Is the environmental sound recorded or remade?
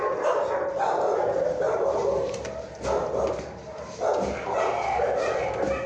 recorded